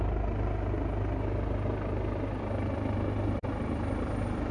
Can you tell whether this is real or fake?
real